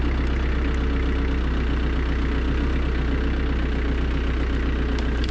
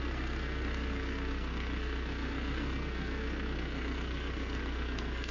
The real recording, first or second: first